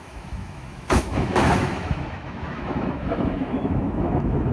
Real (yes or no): no